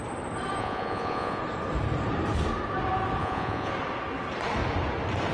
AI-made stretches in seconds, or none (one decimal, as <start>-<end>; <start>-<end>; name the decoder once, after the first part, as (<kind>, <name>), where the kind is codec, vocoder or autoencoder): 0.6-1.4 (vocoder, Vocos); 3.2-3.7